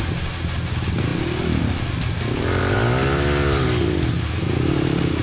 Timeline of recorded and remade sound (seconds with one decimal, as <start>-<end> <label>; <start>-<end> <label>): 0.0-5.2 recorded